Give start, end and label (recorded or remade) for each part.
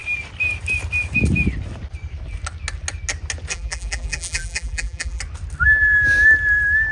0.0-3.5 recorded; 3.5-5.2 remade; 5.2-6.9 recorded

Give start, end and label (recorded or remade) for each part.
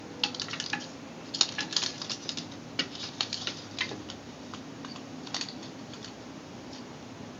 0.0-2.8 recorded; 2.8-6.8 remade; 6.8-7.4 recorded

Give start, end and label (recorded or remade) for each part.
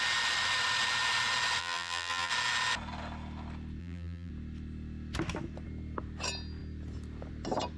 0.0-1.6 recorded; 1.6-2.3 remade; 2.3-3.8 recorded; 3.8-4.3 remade; 4.3-7.8 recorded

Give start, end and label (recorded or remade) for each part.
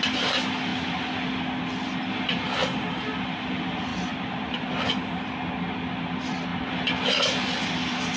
0.0-3.9 recorded; 3.9-4.7 remade; 4.7-6.5 recorded; 6.5-8.2 remade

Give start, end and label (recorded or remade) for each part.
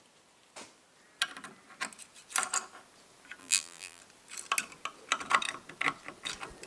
0.0-3.4 recorded; 3.4-4.0 remade; 4.0-6.7 recorded